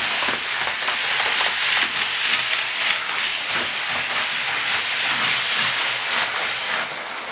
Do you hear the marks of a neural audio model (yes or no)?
no